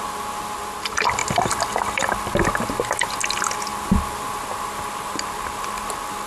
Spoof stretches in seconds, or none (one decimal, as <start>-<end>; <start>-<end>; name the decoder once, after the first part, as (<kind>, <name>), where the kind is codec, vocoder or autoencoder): none